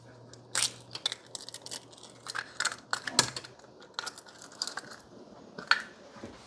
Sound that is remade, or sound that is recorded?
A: recorded